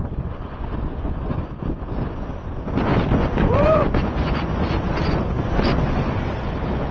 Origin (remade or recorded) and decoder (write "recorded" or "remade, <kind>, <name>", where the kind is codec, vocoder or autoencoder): remade, vocoder, Vocos